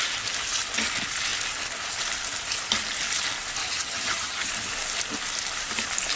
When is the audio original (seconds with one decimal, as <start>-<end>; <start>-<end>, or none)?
0.0-3.6; 4.5-6.2